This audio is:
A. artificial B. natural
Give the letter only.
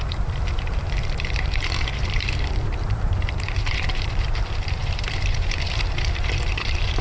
A